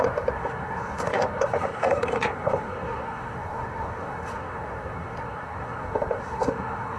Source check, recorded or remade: remade